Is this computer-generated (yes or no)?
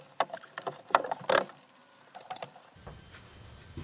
no